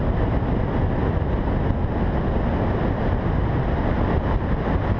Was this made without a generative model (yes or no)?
yes